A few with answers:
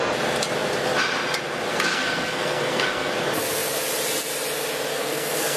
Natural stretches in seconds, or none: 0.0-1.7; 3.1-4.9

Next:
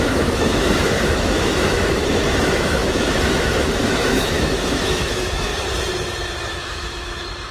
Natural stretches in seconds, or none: 5.5-6.5

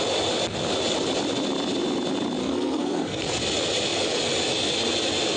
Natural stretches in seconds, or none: 0.0-2.4; 3.2-5.4

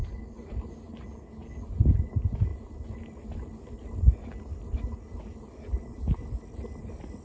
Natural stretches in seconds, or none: 0.0-7.2

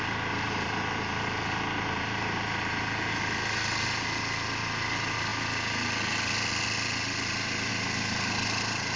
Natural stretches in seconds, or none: 0.0-9.0

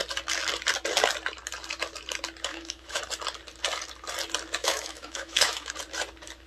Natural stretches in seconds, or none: 0.0-2.5; 3.0-4.6; 5.7-6.5

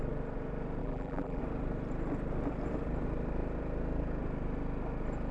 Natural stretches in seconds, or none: 0.0-0.8; 1.4-5.3